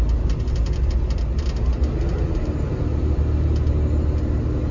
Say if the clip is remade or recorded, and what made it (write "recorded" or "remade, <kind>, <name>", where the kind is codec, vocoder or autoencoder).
recorded